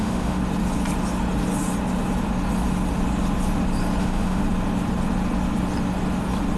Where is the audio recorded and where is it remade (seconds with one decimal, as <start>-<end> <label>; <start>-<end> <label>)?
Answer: 0.0-0.4 remade; 0.4-4.0 recorded; 4.0-4.4 remade; 4.4-6.6 recorded